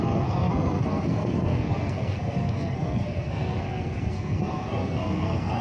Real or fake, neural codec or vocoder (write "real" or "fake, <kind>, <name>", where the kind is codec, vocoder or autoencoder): fake, codec, SNAC